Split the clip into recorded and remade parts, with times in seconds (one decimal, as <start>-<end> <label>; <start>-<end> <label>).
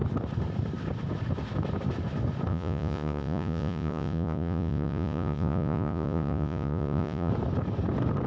0.0-2.5 recorded; 2.5-7.3 remade; 7.3-8.3 recorded